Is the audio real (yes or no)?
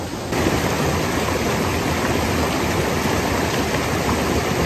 yes